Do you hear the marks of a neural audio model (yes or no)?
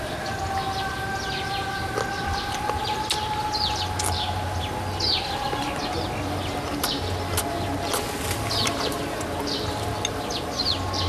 no